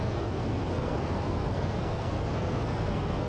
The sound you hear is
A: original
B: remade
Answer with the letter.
B